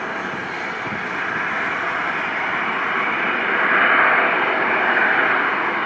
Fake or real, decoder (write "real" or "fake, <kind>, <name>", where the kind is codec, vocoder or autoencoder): fake, vocoder, BigVGAN v2